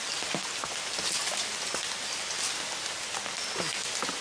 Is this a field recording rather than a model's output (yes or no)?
yes